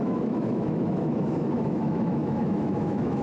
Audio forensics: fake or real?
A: fake